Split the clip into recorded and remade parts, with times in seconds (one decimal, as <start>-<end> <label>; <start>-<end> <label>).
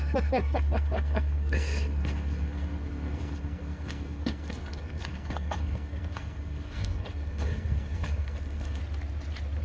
0.0-8.8 remade; 8.8-9.6 recorded